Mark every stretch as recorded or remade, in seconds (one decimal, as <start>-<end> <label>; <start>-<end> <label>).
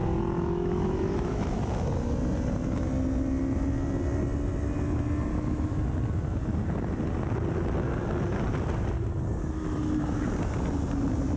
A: 0.0-1.7 remade; 1.7-5.3 recorded; 5.3-5.8 remade; 5.8-9.4 recorded; 9.4-10.3 remade; 10.3-11.4 recorded